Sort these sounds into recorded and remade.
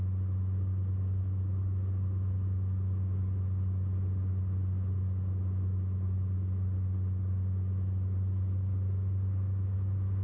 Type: recorded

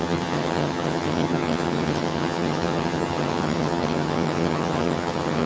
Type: remade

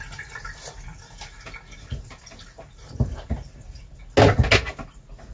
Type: recorded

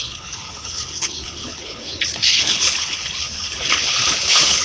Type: remade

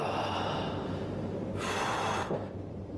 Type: remade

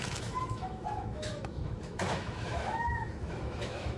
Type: remade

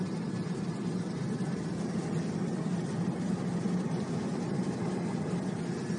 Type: recorded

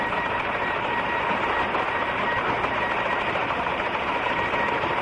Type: recorded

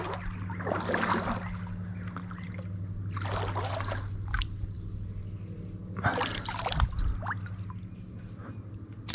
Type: recorded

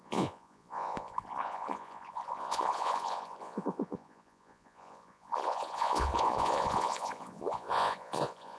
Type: remade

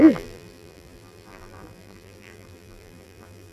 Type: remade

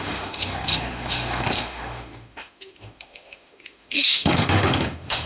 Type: remade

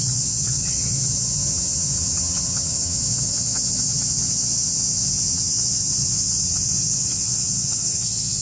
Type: remade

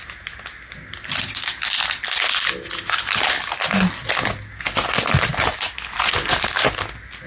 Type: recorded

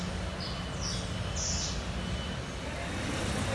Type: recorded